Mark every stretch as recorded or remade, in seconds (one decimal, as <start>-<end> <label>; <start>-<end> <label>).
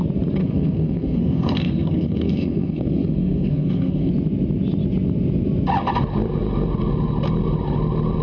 0.0-0.4 recorded; 0.4-4.1 remade; 4.1-8.2 recorded